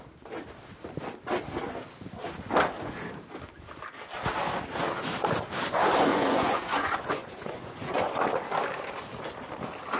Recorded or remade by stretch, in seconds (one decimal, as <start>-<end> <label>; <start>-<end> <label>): 0.0-6.1 recorded; 6.1-8.1 remade; 8.1-10.0 recorded